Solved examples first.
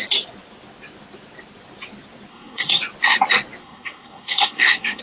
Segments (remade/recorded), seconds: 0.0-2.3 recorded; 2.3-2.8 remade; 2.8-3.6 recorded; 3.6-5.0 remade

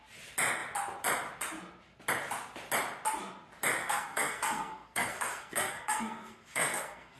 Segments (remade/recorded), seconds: 0.0-3.8 recorded; 3.8-7.2 remade